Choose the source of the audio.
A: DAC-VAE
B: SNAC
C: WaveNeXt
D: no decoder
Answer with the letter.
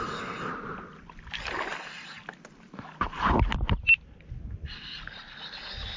D